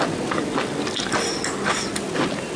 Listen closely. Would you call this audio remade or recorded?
recorded